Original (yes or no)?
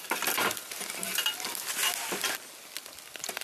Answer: yes